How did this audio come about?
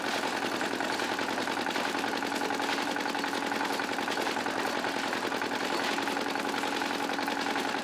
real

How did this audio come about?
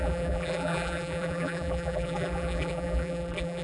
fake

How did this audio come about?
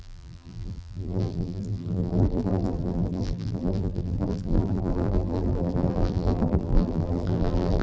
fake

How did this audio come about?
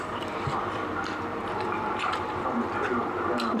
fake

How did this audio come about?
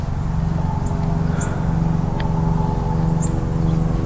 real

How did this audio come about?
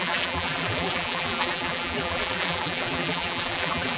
fake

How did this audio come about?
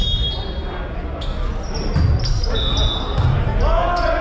real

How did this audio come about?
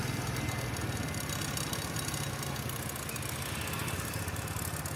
real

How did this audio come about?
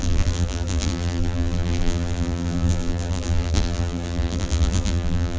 fake